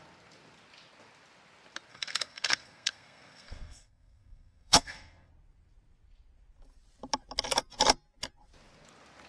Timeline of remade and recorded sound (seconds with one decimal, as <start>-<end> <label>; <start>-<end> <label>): 0.0-1.9 recorded; 1.9-5.3 remade; 5.3-9.3 recorded